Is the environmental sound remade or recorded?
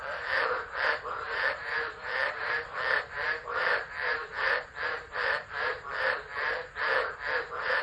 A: remade